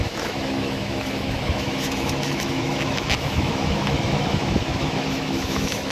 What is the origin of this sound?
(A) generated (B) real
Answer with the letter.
A